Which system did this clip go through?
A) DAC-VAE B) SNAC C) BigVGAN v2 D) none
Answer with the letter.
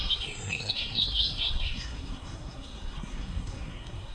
B